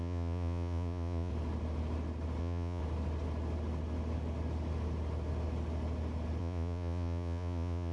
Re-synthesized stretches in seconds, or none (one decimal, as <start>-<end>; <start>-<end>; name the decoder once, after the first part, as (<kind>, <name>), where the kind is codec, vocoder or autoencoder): 0.0-1.3 (vocoder, Vocos); 2.4-2.8; 6.4-7.9

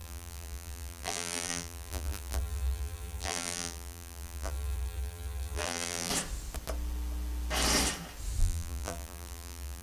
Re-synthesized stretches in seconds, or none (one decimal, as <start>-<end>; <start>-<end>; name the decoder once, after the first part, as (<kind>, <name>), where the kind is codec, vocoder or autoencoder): 0.0-6.1 (vocoder, BigVGAN v2); 8.4-9.8